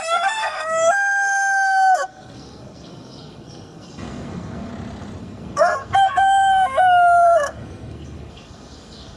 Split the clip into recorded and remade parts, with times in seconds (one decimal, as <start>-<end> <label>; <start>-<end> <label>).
0.0-4.7 remade; 4.7-5.2 recorded; 5.2-9.2 remade